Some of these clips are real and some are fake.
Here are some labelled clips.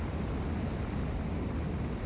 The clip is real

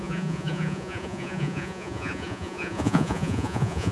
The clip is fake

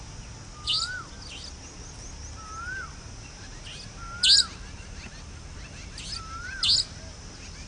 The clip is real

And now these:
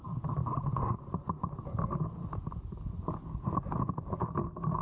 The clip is real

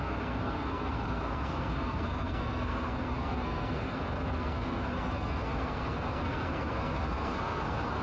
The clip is fake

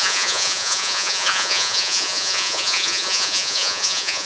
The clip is fake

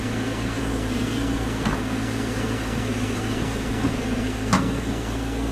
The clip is fake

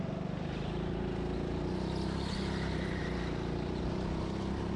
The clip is real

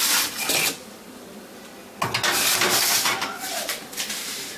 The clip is real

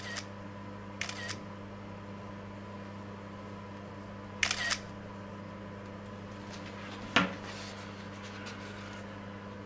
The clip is real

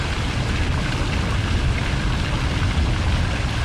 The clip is real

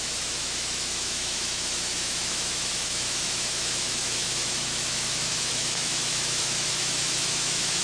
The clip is fake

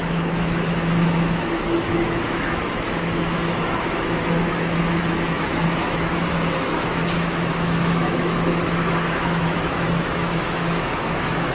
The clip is fake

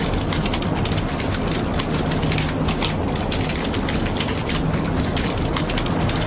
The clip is real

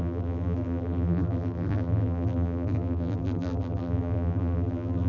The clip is fake